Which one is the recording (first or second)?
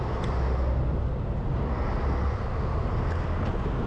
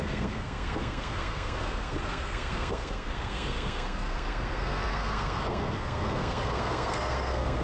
first